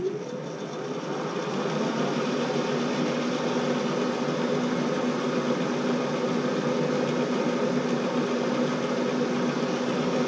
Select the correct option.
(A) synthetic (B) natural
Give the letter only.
B